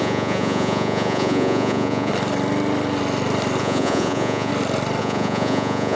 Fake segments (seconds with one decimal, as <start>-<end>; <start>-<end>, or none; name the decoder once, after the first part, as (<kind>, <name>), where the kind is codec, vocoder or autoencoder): 0.0-2.1 (vocoder, Vocos); 3.6-4.5; 5.0-6.0